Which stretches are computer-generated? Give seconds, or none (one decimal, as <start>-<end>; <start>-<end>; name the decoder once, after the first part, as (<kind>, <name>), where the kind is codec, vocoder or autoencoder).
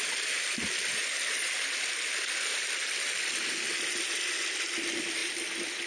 none